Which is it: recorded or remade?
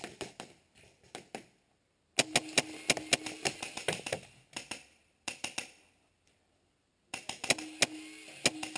recorded